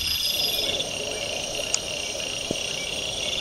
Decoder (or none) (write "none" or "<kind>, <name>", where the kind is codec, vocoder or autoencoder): none